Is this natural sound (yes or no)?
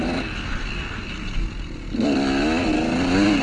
yes